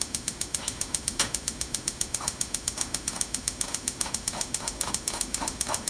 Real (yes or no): no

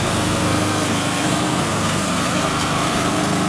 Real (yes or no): no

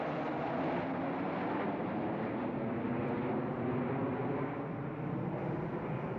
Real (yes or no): yes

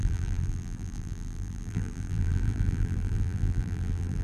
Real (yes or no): no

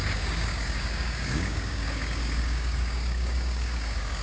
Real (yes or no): no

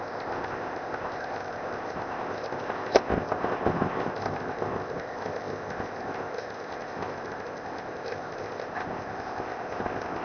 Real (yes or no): no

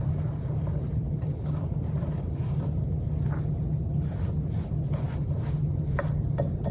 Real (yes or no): yes